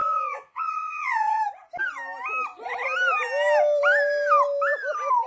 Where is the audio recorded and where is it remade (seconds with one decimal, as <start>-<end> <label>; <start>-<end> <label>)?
0.0-1.4 remade; 1.4-5.3 recorded